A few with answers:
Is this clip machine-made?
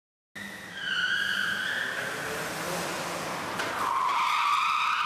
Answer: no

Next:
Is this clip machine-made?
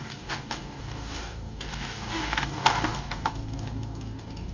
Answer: yes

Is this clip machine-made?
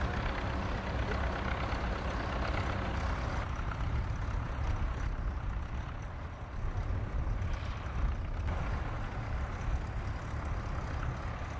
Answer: no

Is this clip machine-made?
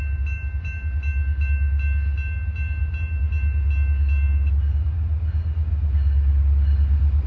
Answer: no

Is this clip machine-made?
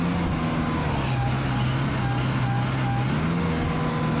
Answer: no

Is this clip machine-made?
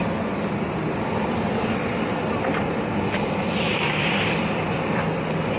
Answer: no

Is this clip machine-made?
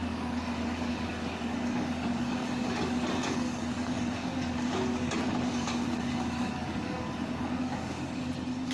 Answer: yes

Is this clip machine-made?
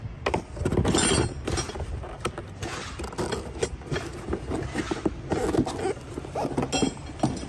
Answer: no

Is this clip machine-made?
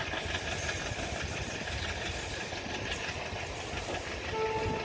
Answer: no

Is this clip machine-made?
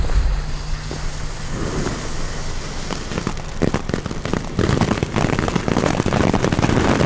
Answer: no